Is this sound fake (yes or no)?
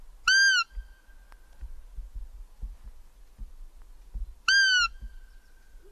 no